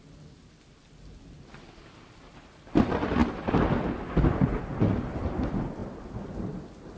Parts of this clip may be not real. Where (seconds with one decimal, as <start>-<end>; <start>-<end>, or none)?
none